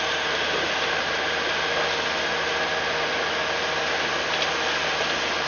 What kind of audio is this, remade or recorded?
recorded